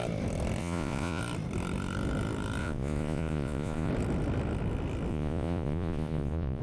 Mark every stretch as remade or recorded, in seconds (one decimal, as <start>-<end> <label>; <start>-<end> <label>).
0.0-0.6 recorded; 0.6-1.2 remade; 1.2-2.6 recorded; 2.6-3.9 remade; 3.9-5.1 recorded; 5.1-6.6 remade